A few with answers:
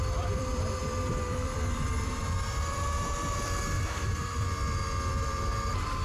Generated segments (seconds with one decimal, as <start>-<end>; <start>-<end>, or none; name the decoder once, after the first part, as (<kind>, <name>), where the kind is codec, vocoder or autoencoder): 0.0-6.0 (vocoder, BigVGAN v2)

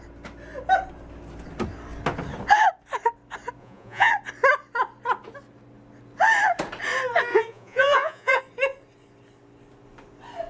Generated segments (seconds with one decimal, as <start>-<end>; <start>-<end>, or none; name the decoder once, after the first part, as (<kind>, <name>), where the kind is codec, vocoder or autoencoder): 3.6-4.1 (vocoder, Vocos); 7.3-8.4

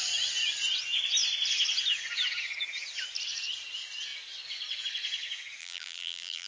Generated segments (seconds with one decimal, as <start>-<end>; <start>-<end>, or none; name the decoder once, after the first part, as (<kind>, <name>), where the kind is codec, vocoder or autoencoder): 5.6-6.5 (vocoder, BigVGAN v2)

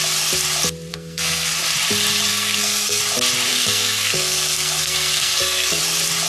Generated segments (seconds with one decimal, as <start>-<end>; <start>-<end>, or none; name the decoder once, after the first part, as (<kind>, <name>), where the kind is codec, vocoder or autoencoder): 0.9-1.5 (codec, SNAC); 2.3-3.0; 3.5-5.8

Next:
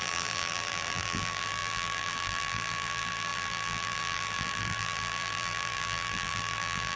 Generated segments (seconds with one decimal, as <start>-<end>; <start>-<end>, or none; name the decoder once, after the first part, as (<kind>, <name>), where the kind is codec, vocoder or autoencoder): 0.0-7.0 (vocoder, BigVGAN v2)

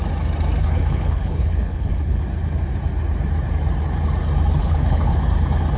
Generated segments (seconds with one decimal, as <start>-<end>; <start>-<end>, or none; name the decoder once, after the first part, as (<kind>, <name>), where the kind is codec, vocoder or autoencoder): 0.6-2.2 (codec, HILCodec); 4.6-5.2

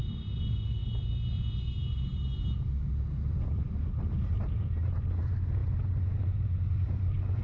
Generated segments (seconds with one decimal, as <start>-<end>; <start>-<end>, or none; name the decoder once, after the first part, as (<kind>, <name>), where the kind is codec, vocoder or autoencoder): none